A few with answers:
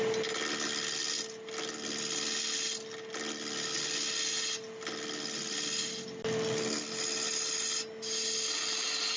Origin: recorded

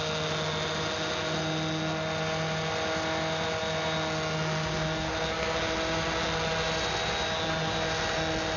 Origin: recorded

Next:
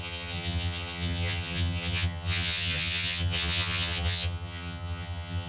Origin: remade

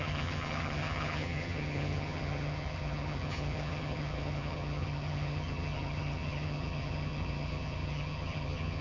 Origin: remade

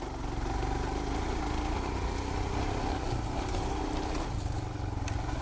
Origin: recorded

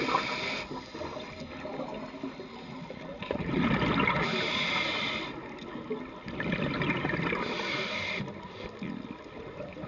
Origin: recorded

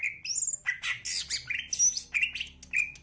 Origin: recorded